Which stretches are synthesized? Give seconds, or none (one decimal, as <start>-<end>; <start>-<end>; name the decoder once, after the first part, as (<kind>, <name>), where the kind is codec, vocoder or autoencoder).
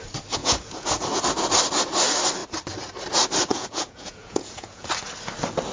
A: 0.4-1.2 (vocoder, Vocos); 3.5-4.9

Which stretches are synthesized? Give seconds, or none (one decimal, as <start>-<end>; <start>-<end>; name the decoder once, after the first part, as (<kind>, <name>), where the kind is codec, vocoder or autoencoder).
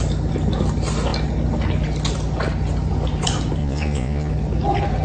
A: 3.6-4.3 (vocoder, Vocos)